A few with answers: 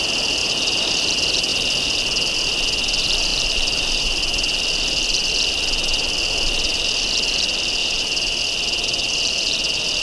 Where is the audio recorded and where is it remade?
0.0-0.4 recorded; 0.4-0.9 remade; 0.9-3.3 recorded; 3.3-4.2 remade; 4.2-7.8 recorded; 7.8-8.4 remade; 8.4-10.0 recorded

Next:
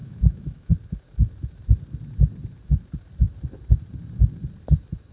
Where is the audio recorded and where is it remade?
0.0-0.7 remade; 0.7-5.1 recorded

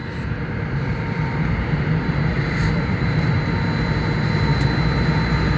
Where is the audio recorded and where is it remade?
0.0-3.4 remade; 3.4-5.6 recorded